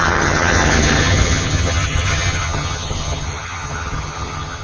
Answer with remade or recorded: remade